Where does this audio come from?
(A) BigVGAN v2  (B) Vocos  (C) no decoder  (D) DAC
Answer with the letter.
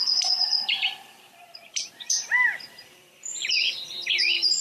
A